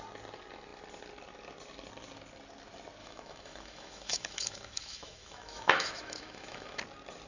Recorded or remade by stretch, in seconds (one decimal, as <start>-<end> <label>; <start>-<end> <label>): 0.0-3.0 recorded; 3.0-6.8 remade; 6.8-7.3 recorded